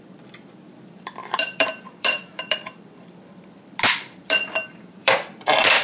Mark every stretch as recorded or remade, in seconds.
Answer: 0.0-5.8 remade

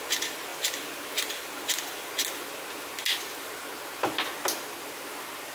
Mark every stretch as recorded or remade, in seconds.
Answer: 0.0-5.5 recorded